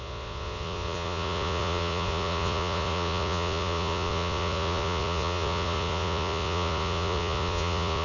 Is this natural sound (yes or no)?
no